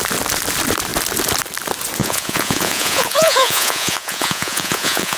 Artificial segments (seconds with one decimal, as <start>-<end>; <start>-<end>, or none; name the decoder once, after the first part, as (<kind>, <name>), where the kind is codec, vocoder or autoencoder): 2.0-5.2 (vocoder, Vocos)